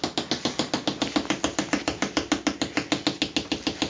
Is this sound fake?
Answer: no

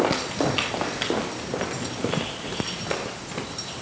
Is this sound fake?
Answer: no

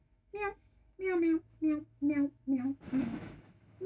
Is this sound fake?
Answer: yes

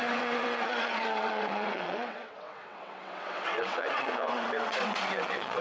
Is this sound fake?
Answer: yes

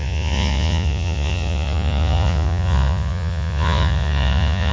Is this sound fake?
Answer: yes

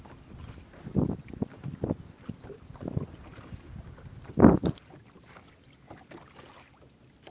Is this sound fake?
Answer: no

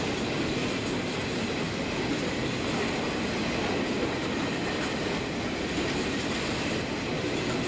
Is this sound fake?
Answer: no